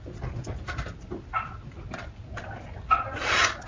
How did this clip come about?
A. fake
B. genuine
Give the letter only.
B